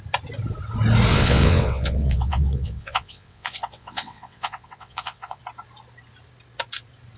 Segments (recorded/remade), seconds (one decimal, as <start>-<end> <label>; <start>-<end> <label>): 0.0-1.1 recorded; 1.1-5.4 remade; 5.4-7.2 recorded